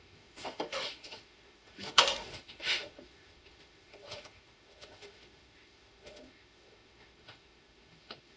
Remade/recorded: remade